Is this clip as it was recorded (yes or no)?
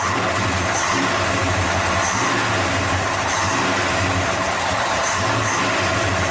yes